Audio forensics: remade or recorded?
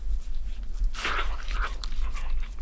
recorded